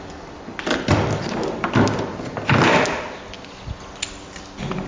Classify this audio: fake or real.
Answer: real